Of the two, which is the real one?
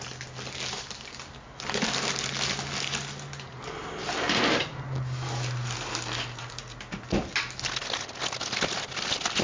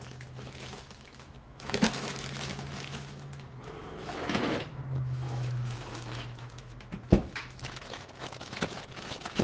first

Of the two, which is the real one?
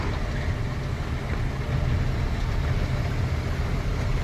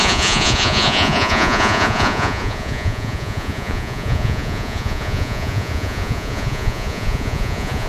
first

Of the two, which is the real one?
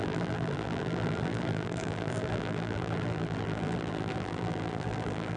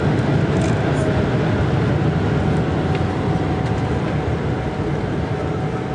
second